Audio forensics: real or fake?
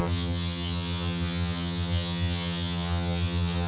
fake